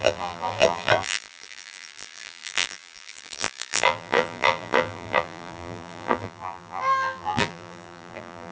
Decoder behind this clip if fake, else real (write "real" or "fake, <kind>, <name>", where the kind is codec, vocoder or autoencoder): fake, vocoder, BigVGAN v2